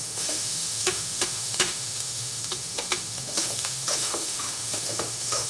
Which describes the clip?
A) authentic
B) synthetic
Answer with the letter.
B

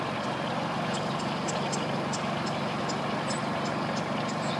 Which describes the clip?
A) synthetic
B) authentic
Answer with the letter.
B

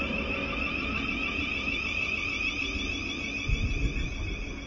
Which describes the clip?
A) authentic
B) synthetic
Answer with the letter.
A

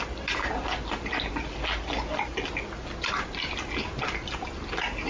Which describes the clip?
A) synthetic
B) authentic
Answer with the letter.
B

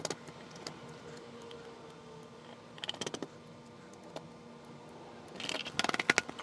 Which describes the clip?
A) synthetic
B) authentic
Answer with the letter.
B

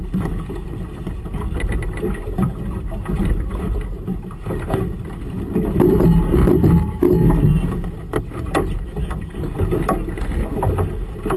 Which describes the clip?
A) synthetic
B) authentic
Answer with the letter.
B